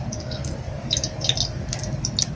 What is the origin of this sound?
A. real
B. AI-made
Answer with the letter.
A